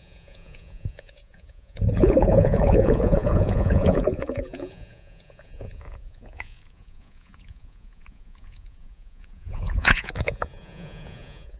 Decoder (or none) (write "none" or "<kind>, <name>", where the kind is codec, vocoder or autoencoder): vocoder, Vocos